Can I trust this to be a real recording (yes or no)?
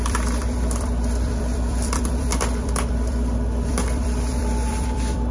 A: no